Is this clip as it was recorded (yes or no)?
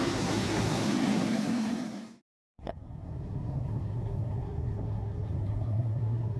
no